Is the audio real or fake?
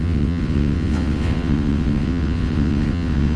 fake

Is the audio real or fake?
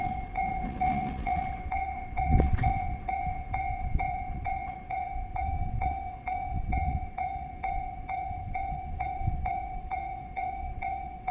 fake